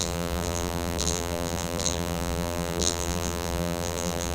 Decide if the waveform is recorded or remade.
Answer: remade